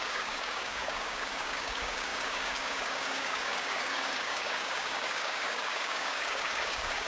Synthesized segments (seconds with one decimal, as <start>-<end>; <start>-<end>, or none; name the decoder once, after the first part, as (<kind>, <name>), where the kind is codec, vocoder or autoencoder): 0.0-7.1 (codec, DAC)